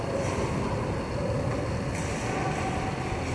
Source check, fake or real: real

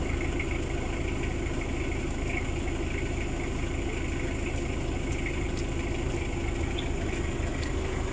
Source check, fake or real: real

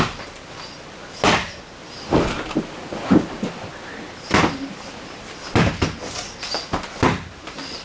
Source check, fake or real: real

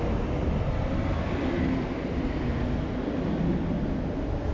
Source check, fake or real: real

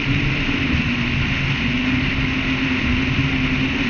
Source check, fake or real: real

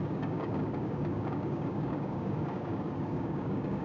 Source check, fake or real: fake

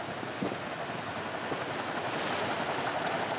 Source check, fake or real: real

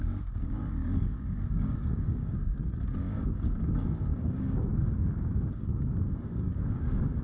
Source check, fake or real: fake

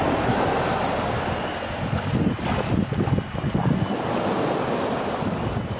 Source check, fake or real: real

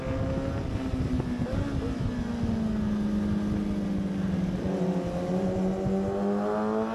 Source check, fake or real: real